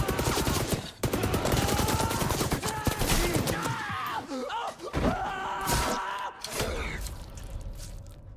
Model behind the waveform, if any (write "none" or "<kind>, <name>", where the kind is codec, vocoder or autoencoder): vocoder, BigVGAN v2